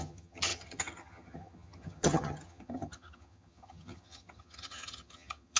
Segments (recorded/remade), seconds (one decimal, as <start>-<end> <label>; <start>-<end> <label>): 0.0-5.6 remade